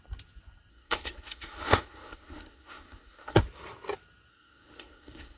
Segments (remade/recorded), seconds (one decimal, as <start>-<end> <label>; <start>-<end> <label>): 0.0-0.7 recorded; 0.7-3.4 remade; 3.4-4.3 recorded; 4.3-5.4 remade